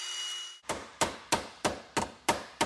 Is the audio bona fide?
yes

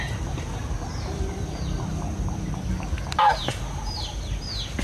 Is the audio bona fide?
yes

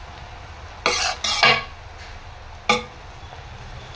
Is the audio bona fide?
yes